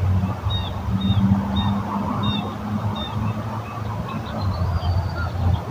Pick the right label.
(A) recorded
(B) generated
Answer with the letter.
A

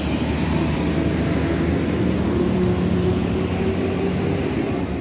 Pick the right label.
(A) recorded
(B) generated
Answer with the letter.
A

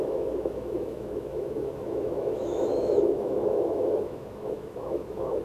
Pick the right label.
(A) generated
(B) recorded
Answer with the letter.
A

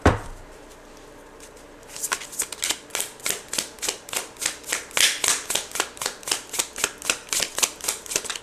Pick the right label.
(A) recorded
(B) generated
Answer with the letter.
A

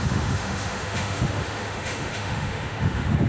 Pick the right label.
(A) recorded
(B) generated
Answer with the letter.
B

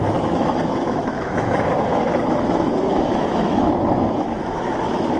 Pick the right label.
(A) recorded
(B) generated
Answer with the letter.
B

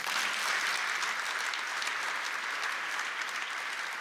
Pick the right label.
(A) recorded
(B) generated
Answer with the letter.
A